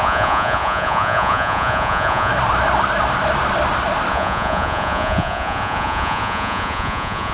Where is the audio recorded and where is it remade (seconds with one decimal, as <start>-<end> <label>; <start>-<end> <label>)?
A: 0.0-2.3 remade; 2.3-4.1 recorded; 4.1-7.3 remade

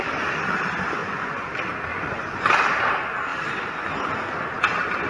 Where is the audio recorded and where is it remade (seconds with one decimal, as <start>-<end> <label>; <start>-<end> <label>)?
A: 0.0-1.0 recorded; 1.0-1.5 remade; 1.5-1.9 recorded; 1.9-2.5 remade; 2.5-5.1 recorded